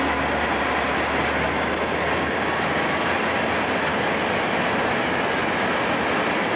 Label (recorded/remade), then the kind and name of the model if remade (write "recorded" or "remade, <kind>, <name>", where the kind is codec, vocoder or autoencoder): recorded